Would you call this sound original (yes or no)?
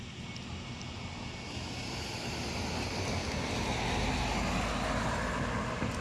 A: yes